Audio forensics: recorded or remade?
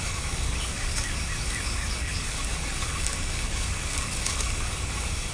remade